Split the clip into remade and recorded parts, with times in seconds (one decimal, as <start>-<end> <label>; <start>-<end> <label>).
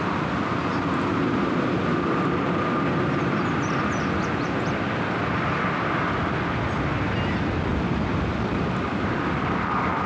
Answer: 0.0-10.1 recorded